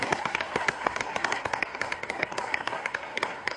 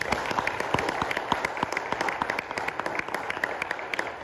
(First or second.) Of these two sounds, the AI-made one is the first